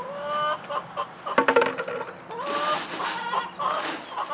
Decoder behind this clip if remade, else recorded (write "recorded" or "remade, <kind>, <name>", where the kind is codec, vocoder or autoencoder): recorded